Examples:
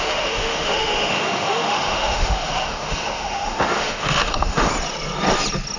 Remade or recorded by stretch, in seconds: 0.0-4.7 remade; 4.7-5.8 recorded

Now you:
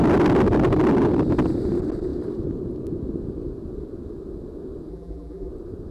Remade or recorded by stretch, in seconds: 0.0-4.9 recorded; 4.9-5.5 remade; 5.5-5.9 recorded